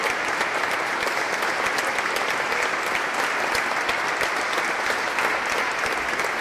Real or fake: real